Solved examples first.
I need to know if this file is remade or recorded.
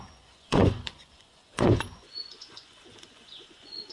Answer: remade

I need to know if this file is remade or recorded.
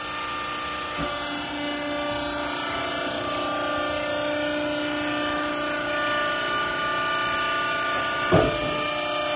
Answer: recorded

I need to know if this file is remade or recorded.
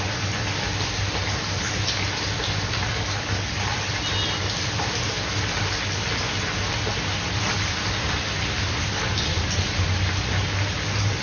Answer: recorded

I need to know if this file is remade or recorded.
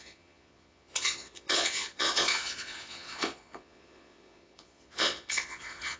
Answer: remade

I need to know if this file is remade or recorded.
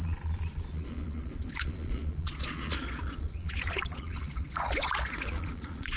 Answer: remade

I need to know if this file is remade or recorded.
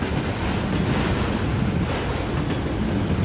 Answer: recorded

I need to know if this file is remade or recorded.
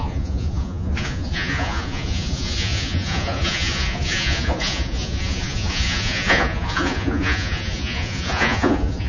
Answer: remade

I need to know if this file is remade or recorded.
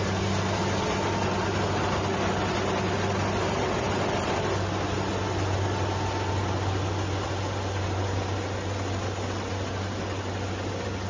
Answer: recorded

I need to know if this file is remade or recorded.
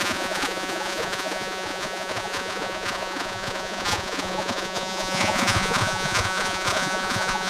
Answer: remade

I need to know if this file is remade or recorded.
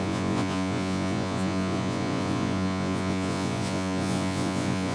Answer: remade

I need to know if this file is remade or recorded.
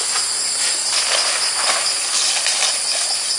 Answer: recorded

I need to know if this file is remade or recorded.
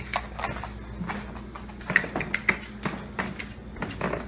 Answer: recorded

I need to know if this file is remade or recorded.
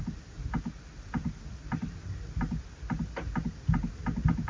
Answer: recorded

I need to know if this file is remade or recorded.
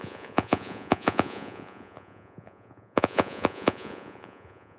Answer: remade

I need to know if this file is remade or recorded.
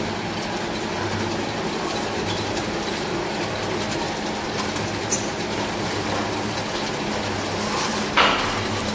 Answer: recorded